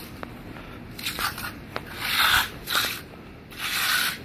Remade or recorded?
recorded